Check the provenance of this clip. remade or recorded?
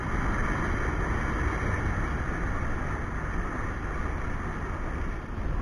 recorded